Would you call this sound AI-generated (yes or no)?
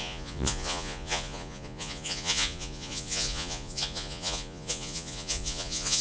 yes